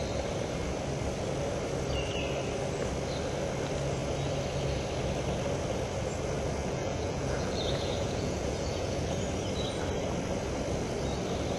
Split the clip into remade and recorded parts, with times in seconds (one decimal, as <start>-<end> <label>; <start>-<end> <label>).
0.0-6.6 recorded; 6.6-9.2 remade; 9.2-11.6 recorded